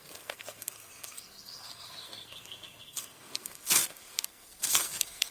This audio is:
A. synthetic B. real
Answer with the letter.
A